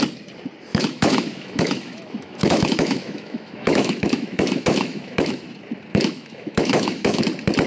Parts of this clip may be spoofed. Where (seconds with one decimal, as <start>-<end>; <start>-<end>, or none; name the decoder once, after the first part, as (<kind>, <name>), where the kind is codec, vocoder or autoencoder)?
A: 0.7-5.3 (autoencoder, DAC-VAE); 5.9-7.2